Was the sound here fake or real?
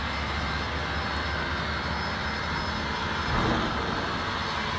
real